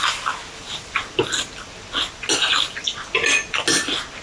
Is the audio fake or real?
real